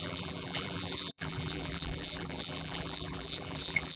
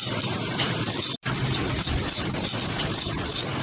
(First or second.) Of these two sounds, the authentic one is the second